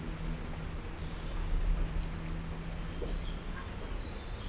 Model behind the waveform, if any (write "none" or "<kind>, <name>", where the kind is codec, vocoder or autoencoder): none